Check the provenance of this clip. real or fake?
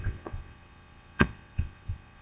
fake